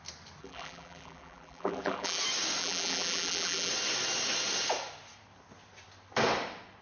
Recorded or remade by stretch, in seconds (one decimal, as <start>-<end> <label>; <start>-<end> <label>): 0.0-0.4 recorded; 0.4-2.2 remade; 2.2-2.6 recorded; 2.6-3.7 remade; 3.7-6.8 recorded